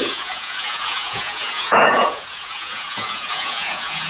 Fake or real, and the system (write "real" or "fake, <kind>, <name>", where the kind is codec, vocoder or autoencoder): fake, vocoder, Vocos